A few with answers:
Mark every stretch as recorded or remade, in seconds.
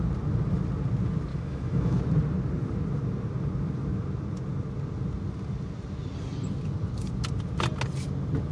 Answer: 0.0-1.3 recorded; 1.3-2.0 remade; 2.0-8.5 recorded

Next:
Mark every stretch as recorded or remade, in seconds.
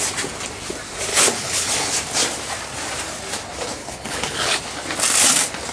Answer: 0.0-1.1 recorded; 1.1-1.7 remade; 1.7-3.8 recorded; 3.8-4.6 remade; 4.6-5.7 recorded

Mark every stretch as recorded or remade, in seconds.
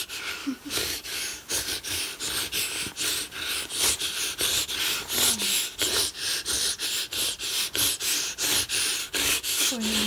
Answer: 0.0-0.4 recorded; 0.4-2.0 remade; 2.0-9.0 recorded; 9.0-9.7 remade; 9.7-10.1 recorded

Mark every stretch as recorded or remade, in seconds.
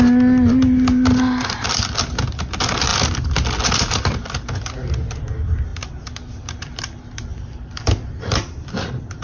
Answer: 0.0-5.7 recorded; 5.7-6.6 remade; 6.6-7.3 recorded; 7.3-8.7 remade; 8.7-9.2 recorded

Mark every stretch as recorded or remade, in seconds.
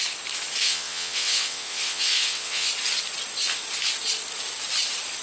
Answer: 0.0-0.6 recorded; 0.6-2.7 remade; 2.7-5.2 recorded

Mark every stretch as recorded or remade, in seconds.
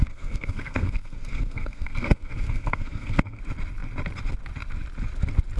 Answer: 0.0-3.4 remade; 3.4-5.6 recorded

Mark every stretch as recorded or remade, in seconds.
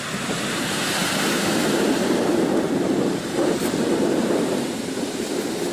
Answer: 0.0-5.7 remade